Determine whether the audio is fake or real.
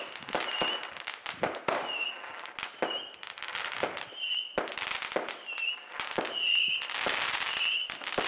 real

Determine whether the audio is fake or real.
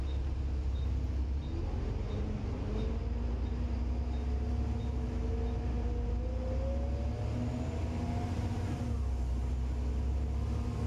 real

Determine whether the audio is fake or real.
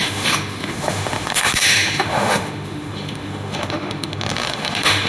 fake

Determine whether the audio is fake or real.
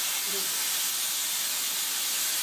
real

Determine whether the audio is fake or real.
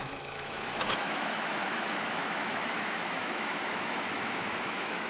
fake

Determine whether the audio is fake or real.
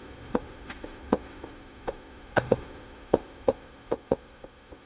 fake